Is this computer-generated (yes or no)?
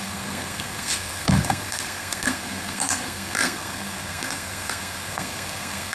yes